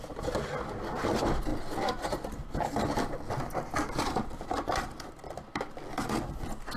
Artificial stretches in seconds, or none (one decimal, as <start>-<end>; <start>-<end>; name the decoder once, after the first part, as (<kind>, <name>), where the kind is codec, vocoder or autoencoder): none